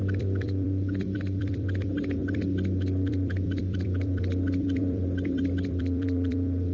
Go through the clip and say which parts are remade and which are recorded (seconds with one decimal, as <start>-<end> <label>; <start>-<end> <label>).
0.0-6.7 remade